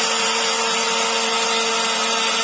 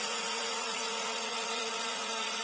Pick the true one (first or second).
first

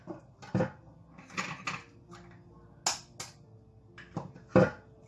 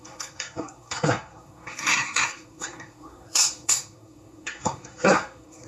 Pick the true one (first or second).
first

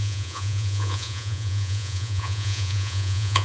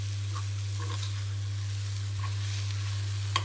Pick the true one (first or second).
second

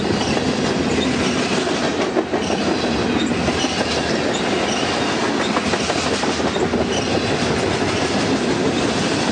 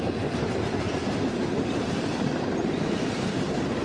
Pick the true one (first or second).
first